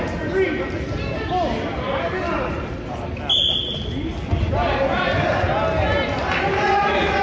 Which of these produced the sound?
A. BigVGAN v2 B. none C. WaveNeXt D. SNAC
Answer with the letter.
B